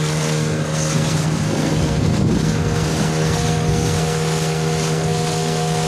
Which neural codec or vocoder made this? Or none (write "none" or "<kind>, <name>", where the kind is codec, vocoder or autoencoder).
codec, SNAC